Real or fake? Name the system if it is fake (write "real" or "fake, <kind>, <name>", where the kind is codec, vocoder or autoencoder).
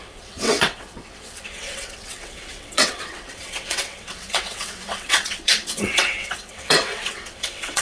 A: fake, vocoder, WaveNeXt